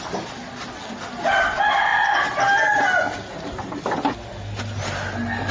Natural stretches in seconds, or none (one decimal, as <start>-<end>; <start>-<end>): 0.0-5.5